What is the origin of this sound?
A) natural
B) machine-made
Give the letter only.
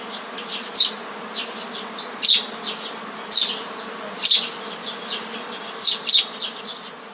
A